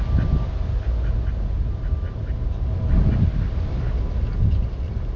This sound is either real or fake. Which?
real